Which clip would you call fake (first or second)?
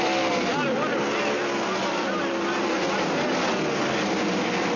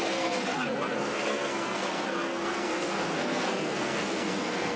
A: second